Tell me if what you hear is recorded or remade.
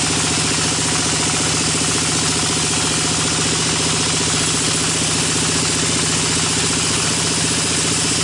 recorded